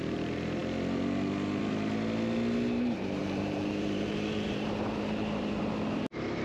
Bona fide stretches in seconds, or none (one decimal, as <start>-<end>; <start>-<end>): 0.0-3.2; 5.5-6.4

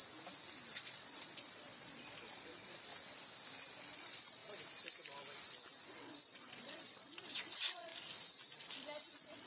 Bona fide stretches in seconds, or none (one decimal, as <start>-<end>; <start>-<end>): 0.0-0.8; 2.9-3.8; 4.4-6.0; 7.9-9.1

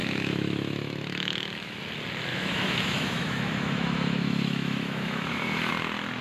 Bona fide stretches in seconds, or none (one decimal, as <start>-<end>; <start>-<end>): 1.8-2.3; 5.7-6.2

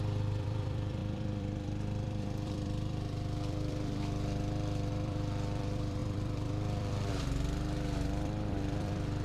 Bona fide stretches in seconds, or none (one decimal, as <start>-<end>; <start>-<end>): none

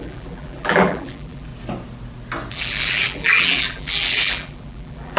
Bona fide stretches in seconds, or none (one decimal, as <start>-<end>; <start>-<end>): 1.5-2.5

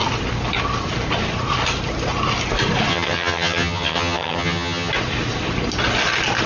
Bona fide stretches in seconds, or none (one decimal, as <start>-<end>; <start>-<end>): 0.0-2.9; 4.9-6.5

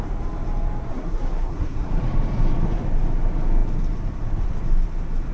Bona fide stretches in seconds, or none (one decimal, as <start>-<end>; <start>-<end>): 0.0-0.9; 2.0-5.3